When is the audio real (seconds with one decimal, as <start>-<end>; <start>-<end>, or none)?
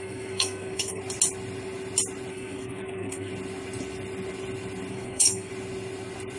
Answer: 1.0-2.3; 3.3-4.9; 5.5-6.4